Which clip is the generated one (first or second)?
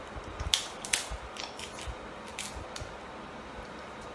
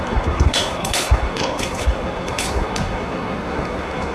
second